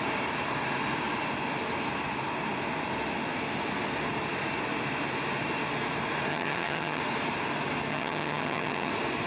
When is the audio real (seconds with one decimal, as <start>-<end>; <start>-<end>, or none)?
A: 0.0-6.3; 7.0-7.9; 8.9-9.3